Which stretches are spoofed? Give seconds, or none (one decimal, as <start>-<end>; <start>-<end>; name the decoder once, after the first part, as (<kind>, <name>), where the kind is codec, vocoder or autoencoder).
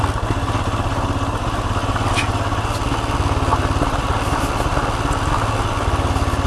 none